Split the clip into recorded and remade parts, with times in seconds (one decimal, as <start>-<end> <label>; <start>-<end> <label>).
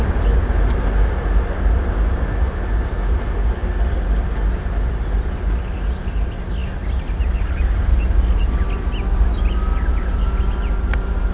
0.0-11.3 recorded